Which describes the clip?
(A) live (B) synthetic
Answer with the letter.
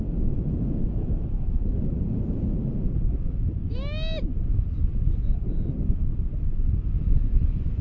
A